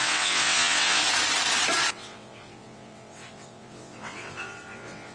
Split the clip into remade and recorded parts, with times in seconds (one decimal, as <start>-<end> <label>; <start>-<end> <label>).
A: 0.0-1.0 remade; 1.0-1.9 recorded; 1.9-5.1 remade